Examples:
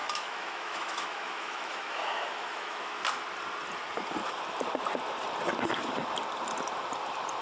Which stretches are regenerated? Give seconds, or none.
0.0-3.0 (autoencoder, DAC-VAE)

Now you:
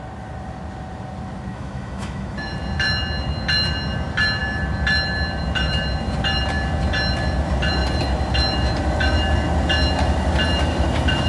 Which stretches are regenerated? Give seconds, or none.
1.5-2.5 (autoencoder, DAC-VAE)